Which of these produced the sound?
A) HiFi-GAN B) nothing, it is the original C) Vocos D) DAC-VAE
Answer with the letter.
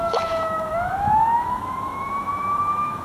D